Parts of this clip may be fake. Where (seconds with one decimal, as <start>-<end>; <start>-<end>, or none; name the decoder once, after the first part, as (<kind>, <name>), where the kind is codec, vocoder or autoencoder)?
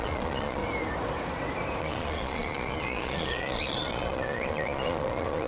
0.0-0.6 (vocoder, Vocos); 1.8-5.5